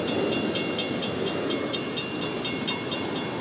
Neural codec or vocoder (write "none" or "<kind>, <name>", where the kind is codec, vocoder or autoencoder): none